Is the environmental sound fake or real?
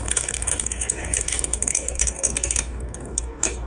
fake